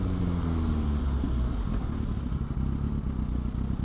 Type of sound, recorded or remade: recorded